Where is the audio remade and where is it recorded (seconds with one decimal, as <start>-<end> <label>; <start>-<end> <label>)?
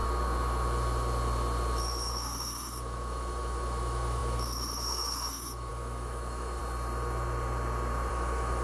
0.0-1.8 recorded; 1.8-6.6 remade; 6.6-8.1 recorded; 8.1-8.6 remade